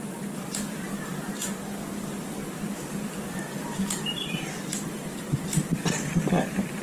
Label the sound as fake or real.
fake